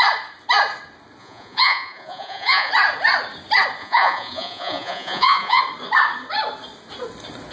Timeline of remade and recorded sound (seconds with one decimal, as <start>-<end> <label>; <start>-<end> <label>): 0.0-1.2 recorded; 1.2-2.7 remade; 2.7-3.8 recorded; 3.8-5.6 remade; 5.6-7.5 recorded